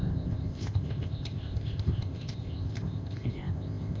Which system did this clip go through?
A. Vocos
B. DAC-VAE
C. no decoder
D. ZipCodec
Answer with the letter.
D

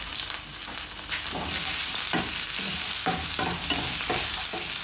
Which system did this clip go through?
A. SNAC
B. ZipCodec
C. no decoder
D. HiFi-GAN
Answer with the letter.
C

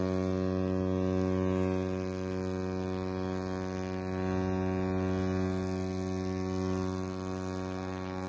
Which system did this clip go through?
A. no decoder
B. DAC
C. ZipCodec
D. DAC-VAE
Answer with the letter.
A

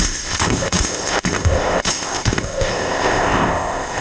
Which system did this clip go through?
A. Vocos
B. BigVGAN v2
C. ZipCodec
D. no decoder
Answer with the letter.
C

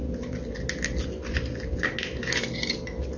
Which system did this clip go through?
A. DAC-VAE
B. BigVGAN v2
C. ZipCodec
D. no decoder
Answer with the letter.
D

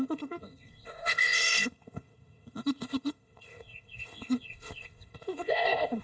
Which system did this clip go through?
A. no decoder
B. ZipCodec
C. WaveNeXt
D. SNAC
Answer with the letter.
B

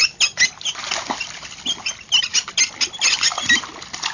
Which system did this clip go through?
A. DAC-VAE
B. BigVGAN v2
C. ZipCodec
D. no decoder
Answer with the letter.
D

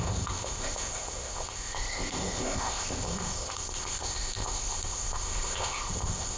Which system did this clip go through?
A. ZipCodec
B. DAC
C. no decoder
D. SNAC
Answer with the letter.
A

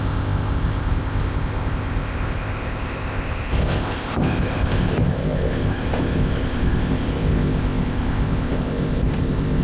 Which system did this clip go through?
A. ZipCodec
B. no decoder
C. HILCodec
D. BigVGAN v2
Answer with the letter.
A